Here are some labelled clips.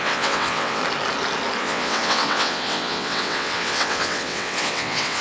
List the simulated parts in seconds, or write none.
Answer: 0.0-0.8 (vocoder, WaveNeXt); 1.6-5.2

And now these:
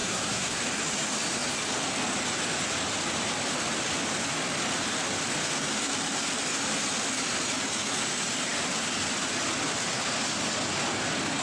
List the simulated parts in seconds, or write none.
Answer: 0.0-0.6 (codec, SNAC)

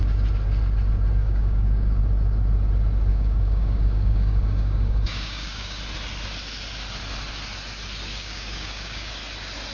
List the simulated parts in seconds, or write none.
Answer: 1.2-2.0 (codec, DAC); 3.1-5.8; 8.1-9.1

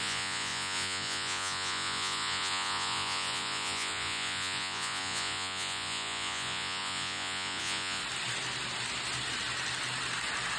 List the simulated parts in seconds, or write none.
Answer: 0.0-8.0 (vocoder, Vocos)

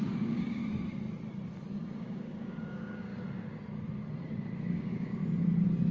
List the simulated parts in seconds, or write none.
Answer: 0.0-0.6 (codec, DAC); 2.0-3.1; 4.7-5.2

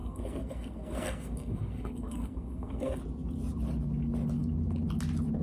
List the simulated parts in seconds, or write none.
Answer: 0.0-3.0 (codec, SNAC)

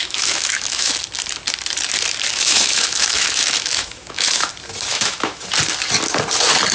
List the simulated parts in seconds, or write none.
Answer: 0.0-0.9 (autoencoder, DAC-VAE); 2.3-4.5; 4.9-5.4

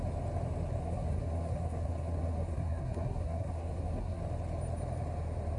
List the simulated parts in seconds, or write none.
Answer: 0.8-4.2 (codec, SNAC)